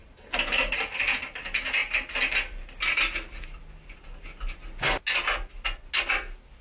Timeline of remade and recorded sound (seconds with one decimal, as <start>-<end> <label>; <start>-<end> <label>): 0.0-6.6 recorded